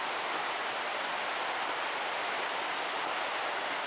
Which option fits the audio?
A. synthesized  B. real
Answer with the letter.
A